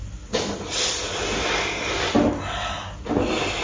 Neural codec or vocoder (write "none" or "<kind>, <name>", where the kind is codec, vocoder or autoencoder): none